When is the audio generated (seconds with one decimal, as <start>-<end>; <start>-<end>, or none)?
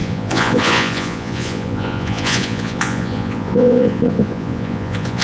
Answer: 0.0-5.2